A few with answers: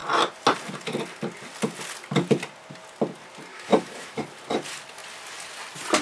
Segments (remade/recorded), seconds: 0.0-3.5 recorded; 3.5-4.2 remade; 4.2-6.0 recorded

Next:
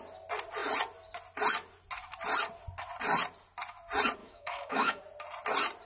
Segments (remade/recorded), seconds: 0.0-4.2 recorded; 4.2-5.0 remade; 5.0-5.9 recorded

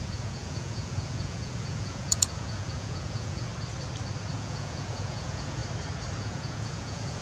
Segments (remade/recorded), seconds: 0.0-3.5 remade; 3.5-4.3 recorded; 4.3-5.6 remade; 5.6-6.2 recorded; 6.2-7.2 remade

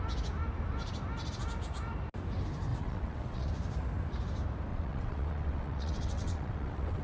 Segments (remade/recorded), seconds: 0.0-2.7 recorded; 2.7-3.5 remade; 3.5-4.7 recorded; 4.7-7.0 remade